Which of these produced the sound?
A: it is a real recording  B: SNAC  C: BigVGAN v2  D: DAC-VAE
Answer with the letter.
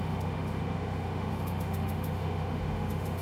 D